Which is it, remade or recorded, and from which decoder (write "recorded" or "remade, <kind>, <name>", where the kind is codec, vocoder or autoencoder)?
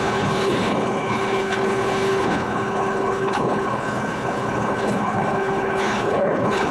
remade, codec, HILCodec